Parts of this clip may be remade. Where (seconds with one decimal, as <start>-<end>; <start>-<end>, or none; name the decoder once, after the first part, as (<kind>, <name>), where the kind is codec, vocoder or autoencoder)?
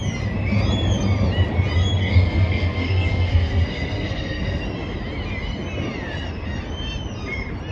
2.0-4.6 (codec, SNAC)